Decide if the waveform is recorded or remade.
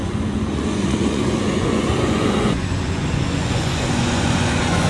remade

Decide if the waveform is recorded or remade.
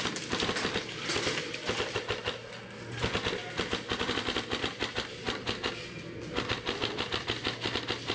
recorded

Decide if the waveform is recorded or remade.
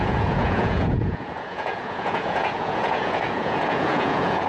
remade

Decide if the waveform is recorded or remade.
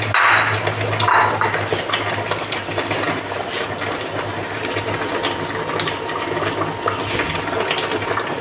recorded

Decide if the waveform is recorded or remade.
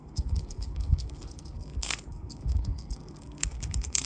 remade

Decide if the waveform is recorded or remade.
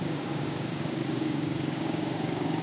remade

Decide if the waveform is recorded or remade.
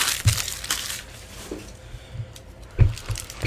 remade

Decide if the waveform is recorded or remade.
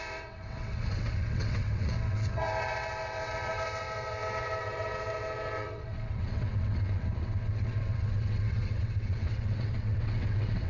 remade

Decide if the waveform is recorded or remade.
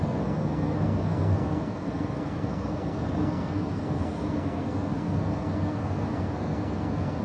remade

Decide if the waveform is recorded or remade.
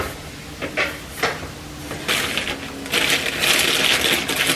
recorded